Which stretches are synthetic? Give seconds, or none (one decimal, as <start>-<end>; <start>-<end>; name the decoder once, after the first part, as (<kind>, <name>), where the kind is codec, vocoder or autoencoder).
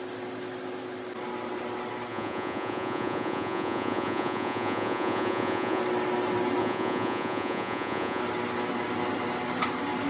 2.1-5.8 (vocoder, Vocos); 6.6-8.2